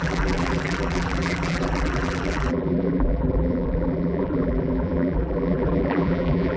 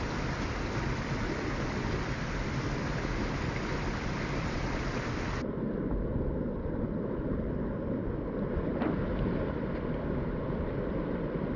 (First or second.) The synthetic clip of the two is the first